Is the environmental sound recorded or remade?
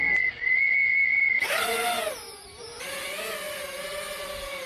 recorded